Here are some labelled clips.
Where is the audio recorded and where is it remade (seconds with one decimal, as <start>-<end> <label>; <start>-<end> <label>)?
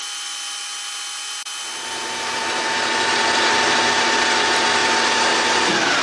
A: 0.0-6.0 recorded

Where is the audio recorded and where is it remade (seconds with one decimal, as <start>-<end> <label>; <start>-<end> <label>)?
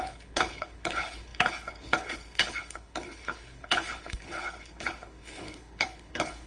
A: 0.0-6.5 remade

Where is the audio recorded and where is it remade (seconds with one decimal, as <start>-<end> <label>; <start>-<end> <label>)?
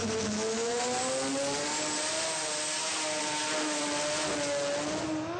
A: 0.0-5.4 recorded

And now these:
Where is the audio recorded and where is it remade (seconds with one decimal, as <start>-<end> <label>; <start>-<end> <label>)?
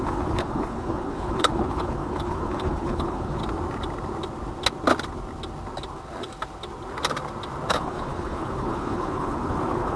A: 0.0-3.4 remade; 3.4-7.7 recorded; 7.7-10.0 remade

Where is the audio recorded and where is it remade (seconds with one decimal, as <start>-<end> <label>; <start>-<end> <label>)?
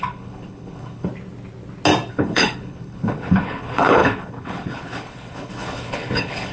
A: 0.0-1.1 remade; 1.1-2.1 recorded; 2.1-6.5 remade